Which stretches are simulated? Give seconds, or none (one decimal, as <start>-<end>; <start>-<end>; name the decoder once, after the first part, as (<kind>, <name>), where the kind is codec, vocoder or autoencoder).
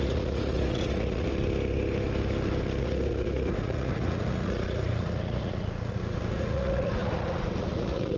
0.0-1.3 (vocoder, Vocos); 2.8-8.2